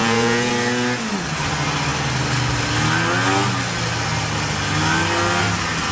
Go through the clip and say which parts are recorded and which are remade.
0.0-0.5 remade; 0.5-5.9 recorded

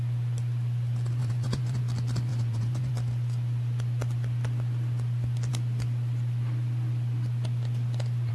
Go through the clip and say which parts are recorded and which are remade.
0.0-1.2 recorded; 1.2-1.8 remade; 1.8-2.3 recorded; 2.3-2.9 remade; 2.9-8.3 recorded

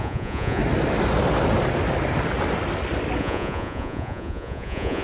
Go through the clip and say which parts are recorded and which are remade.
0.0-0.6 remade; 0.6-3.2 recorded; 3.2-5.0 remade

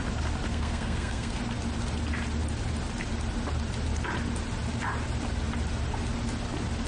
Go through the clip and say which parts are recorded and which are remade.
0.0-0.5 recorded; 0.5-1.4 remade; 1.4-6.9 recorded